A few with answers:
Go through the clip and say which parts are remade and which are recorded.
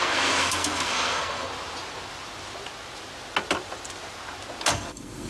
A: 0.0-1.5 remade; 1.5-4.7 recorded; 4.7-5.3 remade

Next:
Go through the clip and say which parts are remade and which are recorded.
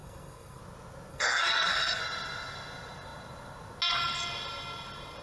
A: 0.0-0.6 remade; 0.6-1.1 recorded; 1.1-2.0 remade; 2.0-5.2 recorded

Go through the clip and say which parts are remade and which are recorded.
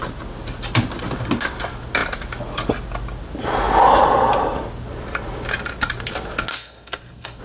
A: 0.0-6.5 recorded; 6.5-7.4 remade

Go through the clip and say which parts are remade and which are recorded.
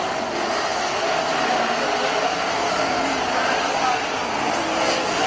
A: 0.0-5.3 recorded